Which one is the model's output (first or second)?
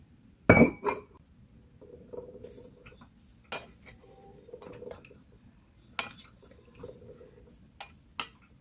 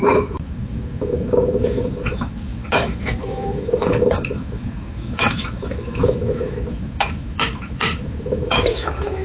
second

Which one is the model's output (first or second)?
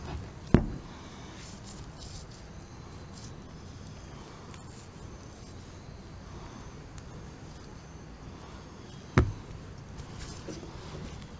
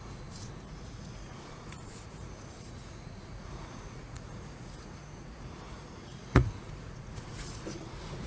second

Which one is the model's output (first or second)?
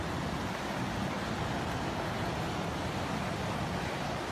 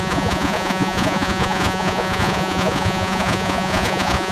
second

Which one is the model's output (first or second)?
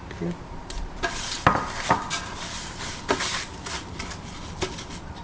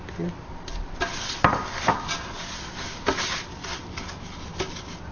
first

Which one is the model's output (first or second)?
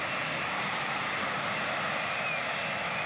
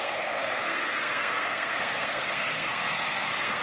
second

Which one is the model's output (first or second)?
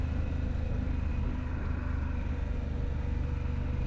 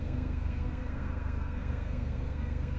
second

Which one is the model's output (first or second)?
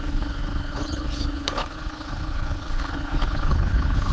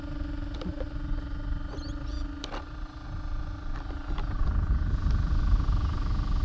first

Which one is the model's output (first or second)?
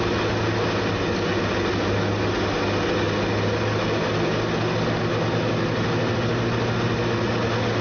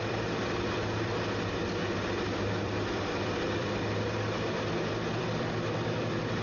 second